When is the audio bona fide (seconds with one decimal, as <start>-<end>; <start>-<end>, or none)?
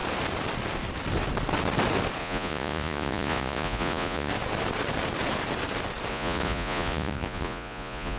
0.0-2.2; 4.3-6.1